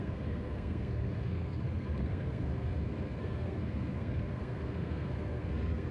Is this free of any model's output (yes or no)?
no